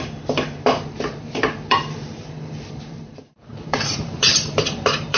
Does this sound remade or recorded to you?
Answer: remade